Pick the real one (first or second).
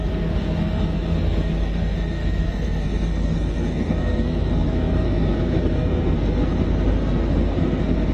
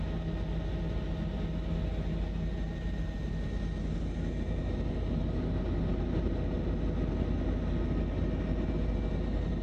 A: second